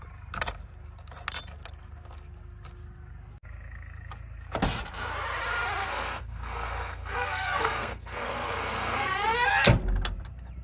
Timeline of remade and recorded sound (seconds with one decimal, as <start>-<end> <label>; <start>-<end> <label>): 0.0-5.8 recorded; 5.8-9.5 remade; 9.5-10.6 recorded